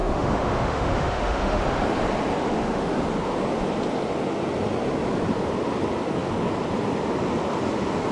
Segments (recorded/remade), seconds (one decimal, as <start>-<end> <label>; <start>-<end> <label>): 0.0-1.6 remade; 1.6-2.4 recorded; 2.4-2.9 remade; 2.9-8.1 recorded